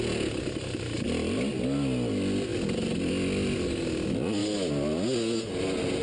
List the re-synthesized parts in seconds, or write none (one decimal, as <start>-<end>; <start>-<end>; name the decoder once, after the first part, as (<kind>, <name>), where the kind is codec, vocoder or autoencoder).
none